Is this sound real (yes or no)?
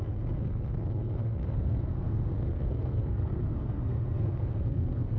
no